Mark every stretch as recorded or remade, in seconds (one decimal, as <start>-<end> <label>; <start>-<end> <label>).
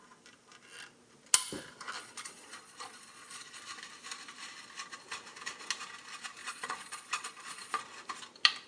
0.0-2.0 recorded; 2.0-3.6 remade; 3.6-6.4 recorded; 6.4-7.8 remade; 7.8-8.7 recorded